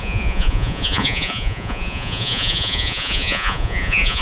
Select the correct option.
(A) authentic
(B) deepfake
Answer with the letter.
B